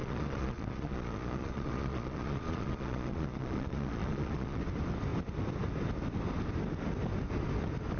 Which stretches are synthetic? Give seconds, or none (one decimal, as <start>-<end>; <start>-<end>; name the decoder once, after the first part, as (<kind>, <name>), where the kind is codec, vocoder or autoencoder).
0.0-4.6 (vocoder, Vocos)